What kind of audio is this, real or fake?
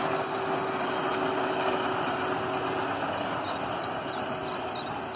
real